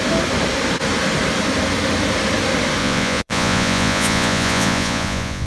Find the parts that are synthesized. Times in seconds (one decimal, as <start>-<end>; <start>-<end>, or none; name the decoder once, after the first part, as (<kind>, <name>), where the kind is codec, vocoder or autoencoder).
2.8-5.5 (vocoder, Vocos)